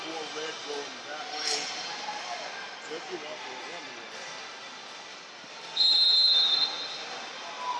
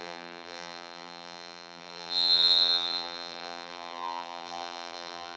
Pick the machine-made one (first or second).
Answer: second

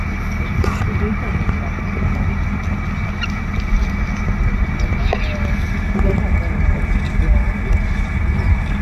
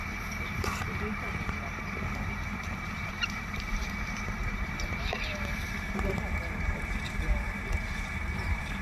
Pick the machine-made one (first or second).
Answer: second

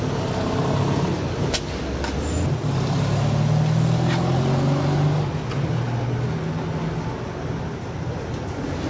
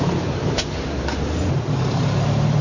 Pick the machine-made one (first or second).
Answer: second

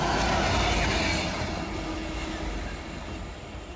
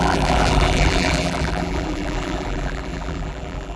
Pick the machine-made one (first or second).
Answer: second